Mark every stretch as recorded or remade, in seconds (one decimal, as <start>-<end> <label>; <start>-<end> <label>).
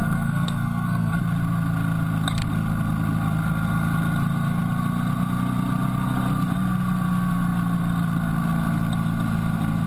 0.0-1.2 remade; 1.2-9.9 recorded